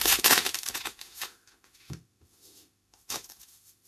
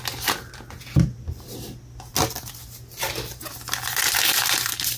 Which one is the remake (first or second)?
first